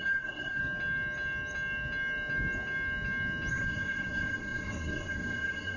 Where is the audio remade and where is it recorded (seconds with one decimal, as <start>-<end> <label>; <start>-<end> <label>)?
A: 0.0-0.6 remade; 0.6-3.5 recorded; 3.5-5.8 remade